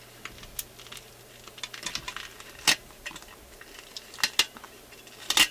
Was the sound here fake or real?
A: real